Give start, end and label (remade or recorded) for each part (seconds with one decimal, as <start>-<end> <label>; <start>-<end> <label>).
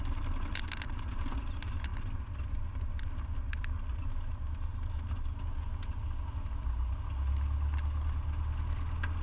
0.0-9.2 recorded